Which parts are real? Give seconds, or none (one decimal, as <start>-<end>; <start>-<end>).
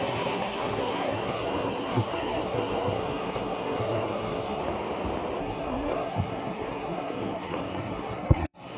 4.6-5.4